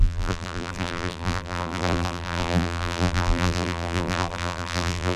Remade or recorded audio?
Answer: remade